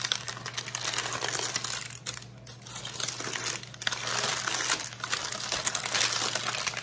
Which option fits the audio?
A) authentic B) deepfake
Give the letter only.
A